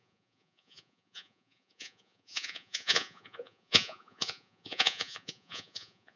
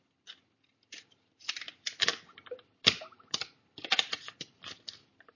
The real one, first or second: second